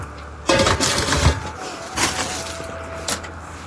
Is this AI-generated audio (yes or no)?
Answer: no